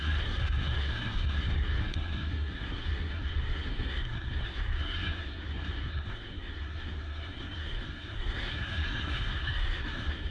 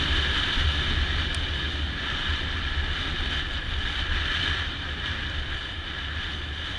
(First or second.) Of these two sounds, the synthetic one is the first